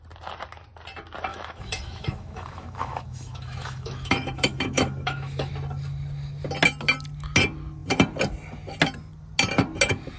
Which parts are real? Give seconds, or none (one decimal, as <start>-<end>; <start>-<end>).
0.0-1.3; 5.5-10.2